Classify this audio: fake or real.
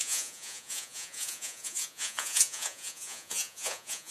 fake